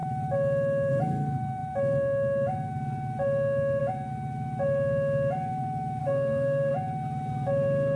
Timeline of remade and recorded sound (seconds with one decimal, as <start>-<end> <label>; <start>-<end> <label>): 0.0-6.0 recorded; 6.0-6.7 remade; 6.7-8.0 recorded